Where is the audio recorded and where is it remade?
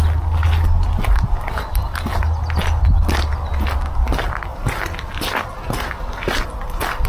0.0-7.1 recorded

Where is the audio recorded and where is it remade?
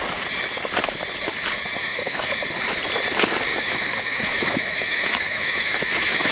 0.0-1.8 recorded; 1.8-2.4 remade; 2.4-3.5 recorded; 3.5-6.3 remade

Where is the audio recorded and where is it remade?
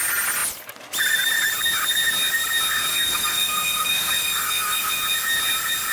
0.0-2.9 recorded; 2.9-4.9 remade; 4.9-5.9 recorded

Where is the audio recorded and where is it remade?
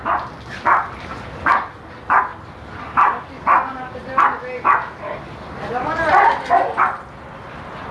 0.0-7.9 recorded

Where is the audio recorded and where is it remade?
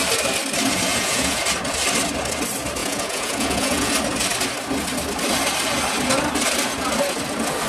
0.0-0.9 recorded; 0.9-1.4 remade; 1.4-2.8 recorded; 2.8-3.9 remade; 3.9-7.7 recorded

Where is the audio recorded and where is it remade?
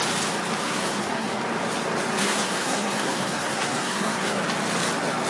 0.0-0.6 recorded; 0.6-1.4 remade; 1.4-2.2 recorded; 2.2-4.4 remade; 4.4-5.3 recorded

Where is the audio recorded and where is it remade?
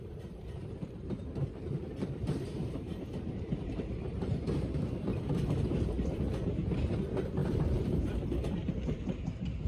0.0-5.1 remade; 5.1-5.8 recorded; 5.8-9.7 remade